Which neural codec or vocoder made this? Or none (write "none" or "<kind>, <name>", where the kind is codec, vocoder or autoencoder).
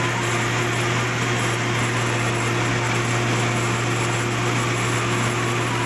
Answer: none